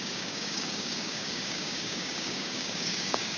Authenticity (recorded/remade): remade